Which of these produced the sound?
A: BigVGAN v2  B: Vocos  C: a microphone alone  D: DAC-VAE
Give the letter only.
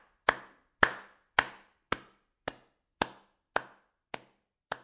C